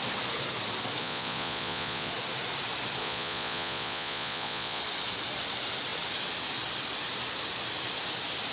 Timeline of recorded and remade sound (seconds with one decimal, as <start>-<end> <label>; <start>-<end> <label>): 0.0-1.0 recorded; 1.0-2.1 remade; 2.1-3.0 recorded; 3.0-4.8 remade; 4.8-8.5 recorded